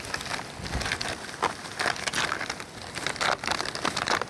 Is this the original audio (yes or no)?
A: yes